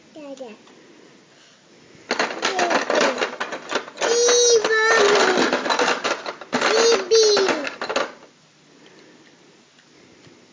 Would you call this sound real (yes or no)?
yes